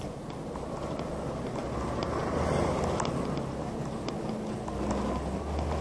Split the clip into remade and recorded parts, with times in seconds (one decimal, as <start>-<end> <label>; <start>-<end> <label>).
0.0-5.8 recorded